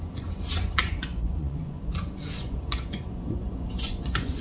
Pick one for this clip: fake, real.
fake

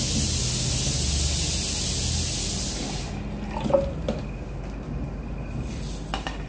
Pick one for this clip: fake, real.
real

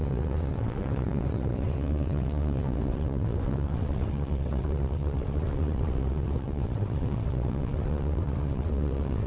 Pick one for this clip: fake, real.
fake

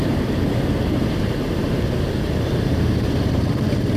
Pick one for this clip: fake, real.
fake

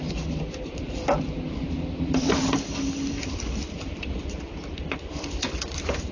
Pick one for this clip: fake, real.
fake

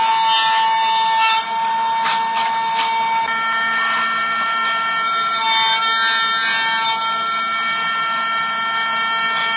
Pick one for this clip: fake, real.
real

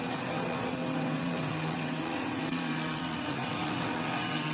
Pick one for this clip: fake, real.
fake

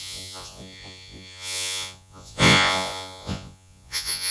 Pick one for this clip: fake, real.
fake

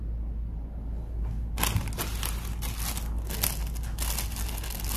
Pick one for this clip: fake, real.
real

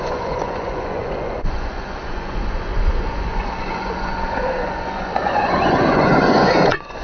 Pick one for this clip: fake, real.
fake